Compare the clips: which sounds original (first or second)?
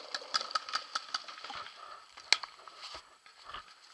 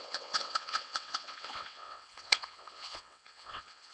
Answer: first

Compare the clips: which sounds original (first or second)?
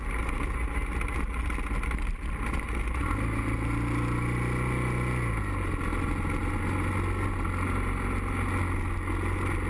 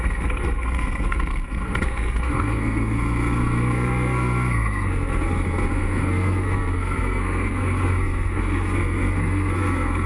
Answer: first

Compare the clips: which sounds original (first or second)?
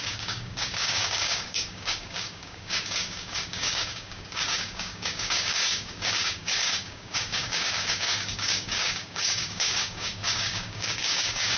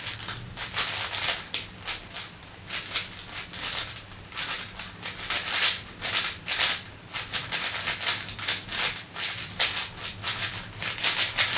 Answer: second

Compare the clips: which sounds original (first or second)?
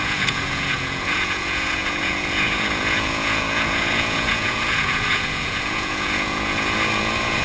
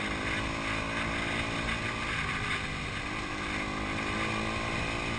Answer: second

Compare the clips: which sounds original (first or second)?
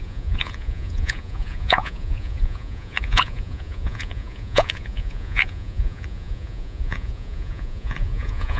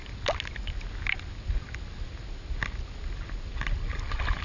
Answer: second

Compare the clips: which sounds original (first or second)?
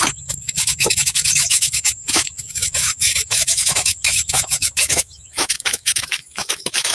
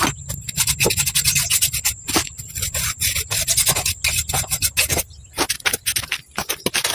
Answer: second